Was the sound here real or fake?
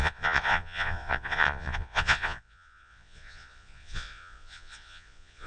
fake